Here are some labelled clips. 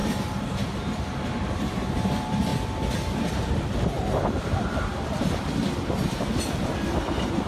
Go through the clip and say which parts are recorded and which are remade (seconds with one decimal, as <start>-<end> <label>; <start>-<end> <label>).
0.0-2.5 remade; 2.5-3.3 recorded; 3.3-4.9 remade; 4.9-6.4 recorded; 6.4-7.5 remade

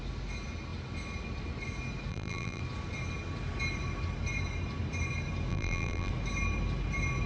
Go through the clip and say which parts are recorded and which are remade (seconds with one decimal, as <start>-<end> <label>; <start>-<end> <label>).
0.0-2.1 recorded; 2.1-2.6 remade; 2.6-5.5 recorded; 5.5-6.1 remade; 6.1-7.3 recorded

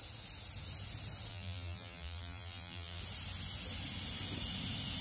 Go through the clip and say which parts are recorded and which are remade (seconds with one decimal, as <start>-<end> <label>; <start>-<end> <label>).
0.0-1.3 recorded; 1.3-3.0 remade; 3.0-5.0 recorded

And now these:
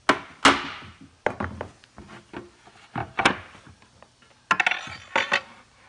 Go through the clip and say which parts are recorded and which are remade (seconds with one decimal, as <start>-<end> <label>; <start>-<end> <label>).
0.0-3.0 recorded; 3.0-4.3 remade; 4.3-5.9 recorded